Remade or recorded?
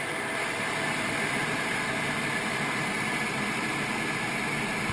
recorded